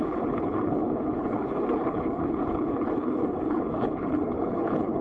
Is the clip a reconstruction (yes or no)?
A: yes